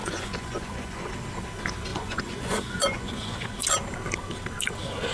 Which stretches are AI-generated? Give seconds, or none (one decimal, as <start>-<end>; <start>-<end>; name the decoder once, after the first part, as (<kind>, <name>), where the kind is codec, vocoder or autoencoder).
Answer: 0.0-1.1 (vocoder, Vocos); 1.9-3.5